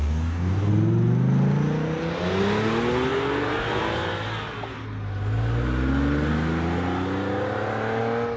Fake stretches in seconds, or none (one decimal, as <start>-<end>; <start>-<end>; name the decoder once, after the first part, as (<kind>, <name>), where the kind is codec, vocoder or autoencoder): 0.0-0.7 (codec, DAC)

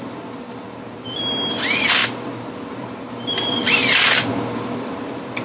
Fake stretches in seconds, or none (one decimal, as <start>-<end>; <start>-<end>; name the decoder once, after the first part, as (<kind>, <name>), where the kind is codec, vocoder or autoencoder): 0.0-5.4 (vocoder, BigVGAN v2)

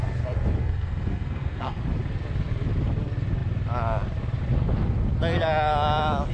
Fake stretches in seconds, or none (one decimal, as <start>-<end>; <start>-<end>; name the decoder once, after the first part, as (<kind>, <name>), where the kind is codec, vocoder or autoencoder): 0.6-1.8 (codec, SNAC)

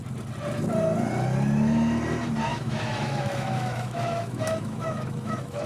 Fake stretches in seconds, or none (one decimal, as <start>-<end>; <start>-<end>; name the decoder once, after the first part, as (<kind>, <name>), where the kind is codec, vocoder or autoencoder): 2.5-5.7 (autoencoder, DAC-VAE)

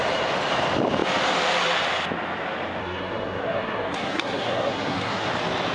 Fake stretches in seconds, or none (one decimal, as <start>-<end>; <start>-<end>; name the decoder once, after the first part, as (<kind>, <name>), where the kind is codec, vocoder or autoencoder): 2.8-5.3 (codec, SNAC)

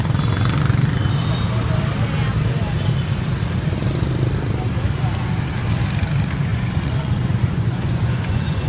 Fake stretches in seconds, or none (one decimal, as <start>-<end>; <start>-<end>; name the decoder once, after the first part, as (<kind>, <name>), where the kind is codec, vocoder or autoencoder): 6.5-8.7 (vocoder, Vocos)